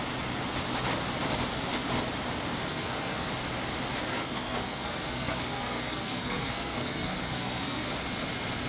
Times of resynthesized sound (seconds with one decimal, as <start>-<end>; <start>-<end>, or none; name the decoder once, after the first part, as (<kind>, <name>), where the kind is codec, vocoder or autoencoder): 2.7-3.3 (codec, SNAC); 4.1-7.9